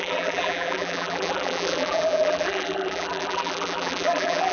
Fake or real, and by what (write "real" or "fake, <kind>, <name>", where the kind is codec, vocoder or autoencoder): fake, vocoder, BigVGAN v2